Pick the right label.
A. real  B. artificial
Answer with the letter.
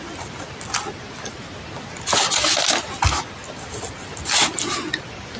A